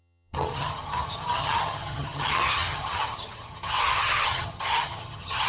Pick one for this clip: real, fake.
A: fake